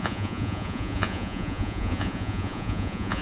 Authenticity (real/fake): fake